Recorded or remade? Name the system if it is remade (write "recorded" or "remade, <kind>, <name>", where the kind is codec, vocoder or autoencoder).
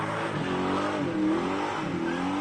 recorded